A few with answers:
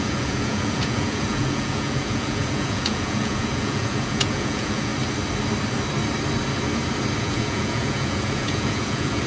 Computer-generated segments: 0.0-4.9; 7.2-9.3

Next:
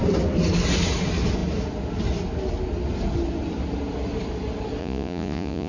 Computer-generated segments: 4.8-5.7

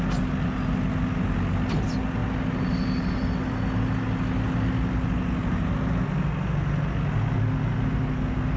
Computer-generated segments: none

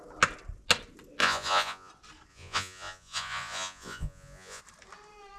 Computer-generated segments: 1.2-1.9; 2.3-4.6

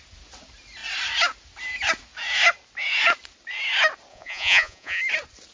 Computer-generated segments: 4.1-5.0

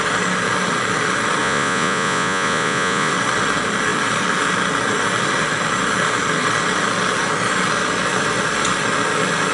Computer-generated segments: 1.4-3.1

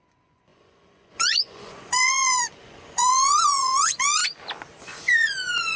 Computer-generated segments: 0.0-4.2; 4.8-5.8

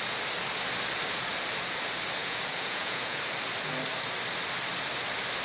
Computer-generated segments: 2.2-3.2